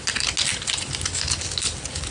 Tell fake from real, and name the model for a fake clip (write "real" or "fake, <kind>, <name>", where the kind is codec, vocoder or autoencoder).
real